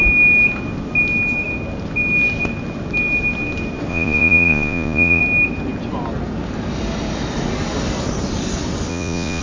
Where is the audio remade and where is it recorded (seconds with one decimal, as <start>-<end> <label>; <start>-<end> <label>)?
0.0-3.9 recorded; 3.9-5.2 remade; 5.2-8.9 recorded; 8.9-9.4 remade